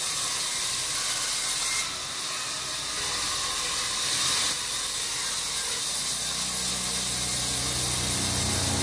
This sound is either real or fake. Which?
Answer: real